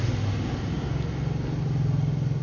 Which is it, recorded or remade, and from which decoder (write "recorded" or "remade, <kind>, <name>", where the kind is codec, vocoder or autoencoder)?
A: recorded